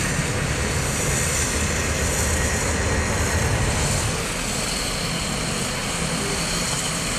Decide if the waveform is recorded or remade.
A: recorded